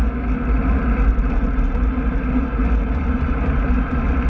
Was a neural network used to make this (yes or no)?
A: no